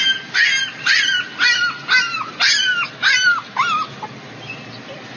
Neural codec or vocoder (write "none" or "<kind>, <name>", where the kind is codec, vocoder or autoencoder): none